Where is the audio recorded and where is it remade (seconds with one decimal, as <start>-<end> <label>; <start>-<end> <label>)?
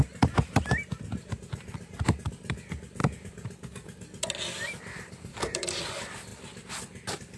0.0-5.3 recorded; 5.3-5.8 remade; 5.8-7.4 recorded